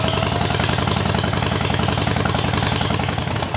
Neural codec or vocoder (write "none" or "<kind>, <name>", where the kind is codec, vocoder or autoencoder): none